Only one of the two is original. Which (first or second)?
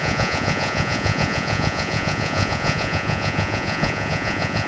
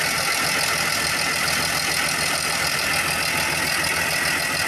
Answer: second